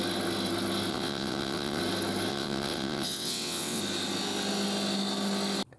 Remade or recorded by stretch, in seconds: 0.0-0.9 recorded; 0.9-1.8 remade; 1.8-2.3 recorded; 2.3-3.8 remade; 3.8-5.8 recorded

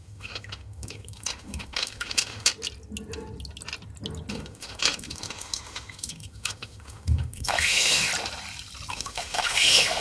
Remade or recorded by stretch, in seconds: 0.0-2.5 remade; 2.5-4.3 recorded; 4.3-8.1 remade; 8.1-8.9 recorded; 8.9-10.0 remade

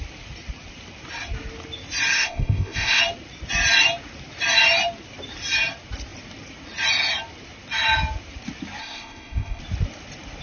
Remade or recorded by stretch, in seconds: 0.0-2.1 recorded; 2.1-3.0 remade; 3.0-8.8 recorded; 8.8-9.6 remade; 9.6-10.4 recorded

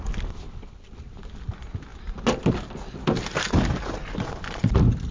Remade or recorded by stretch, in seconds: 0.0-5.1 recorded

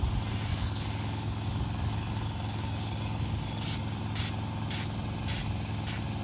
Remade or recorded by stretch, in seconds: 0.0-0.5 recorded; 0.5-3.8 remade; 3.8-6.2 recorded

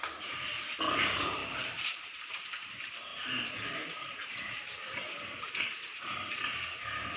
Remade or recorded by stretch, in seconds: 0.0-1.4 recorded; 1.4-2.0 remade; 2.0-3.1 recorded; 3.1-4.8 remade; 4.8-7.2 recorded